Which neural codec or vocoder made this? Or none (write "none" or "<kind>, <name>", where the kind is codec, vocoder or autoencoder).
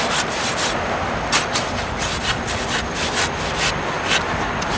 none